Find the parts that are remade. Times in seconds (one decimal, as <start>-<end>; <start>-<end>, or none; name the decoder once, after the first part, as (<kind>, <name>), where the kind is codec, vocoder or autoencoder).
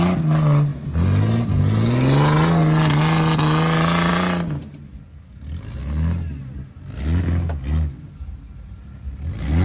none